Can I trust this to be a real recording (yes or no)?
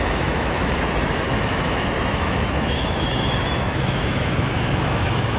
no